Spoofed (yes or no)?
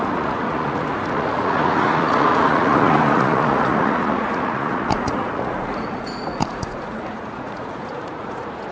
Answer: yes